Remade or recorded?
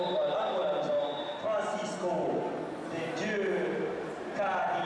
recorded